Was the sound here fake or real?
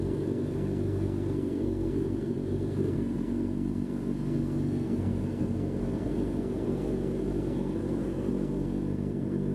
fake